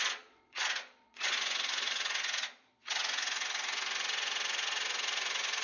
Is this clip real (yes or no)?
no